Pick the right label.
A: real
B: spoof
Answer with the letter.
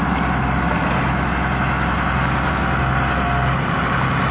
A